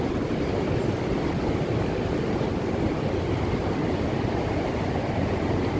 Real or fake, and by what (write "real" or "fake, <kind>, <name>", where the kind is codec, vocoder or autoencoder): real